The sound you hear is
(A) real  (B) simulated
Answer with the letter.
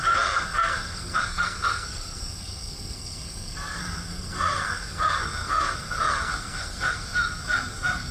B